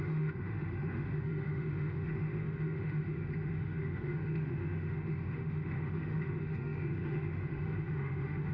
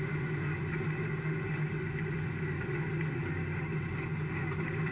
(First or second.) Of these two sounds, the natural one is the second